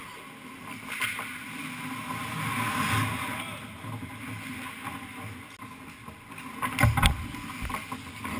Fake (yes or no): no